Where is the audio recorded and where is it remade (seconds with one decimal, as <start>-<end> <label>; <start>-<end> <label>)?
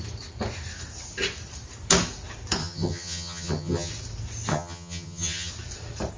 0.0-2.6 recorded; 2.6-3.9 remade; 3.9-4.5 recorded; 4.5-5.5 remade; 5.5-6.2 recorded